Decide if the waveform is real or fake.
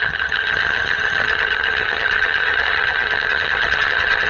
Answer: fake